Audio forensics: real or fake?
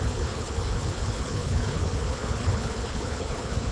fake